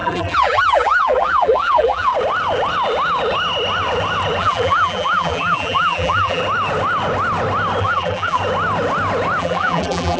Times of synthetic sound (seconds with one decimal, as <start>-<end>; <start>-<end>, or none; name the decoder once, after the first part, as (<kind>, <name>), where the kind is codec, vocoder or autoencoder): 0.0-2.1 (vocoder, BigVGAN v2); 4.4-6.4; 7.8-8.4; 9.4-10.2